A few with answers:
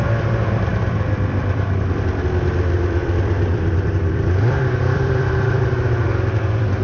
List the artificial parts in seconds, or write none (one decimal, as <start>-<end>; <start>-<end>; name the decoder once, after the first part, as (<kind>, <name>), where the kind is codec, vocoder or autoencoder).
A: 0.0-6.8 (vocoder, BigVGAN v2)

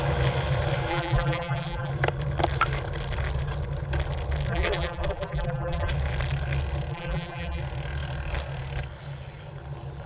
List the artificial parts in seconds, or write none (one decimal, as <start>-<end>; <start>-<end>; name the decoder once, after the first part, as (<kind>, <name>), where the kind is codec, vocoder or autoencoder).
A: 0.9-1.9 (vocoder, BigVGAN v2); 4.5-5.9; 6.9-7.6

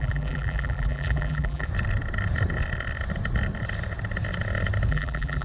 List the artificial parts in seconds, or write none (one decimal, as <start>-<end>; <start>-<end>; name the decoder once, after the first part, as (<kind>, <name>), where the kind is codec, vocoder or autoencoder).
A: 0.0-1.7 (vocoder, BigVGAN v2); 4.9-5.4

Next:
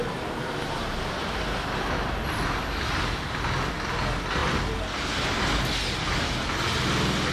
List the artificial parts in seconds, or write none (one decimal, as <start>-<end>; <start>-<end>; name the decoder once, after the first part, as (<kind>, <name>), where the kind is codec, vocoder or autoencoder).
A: none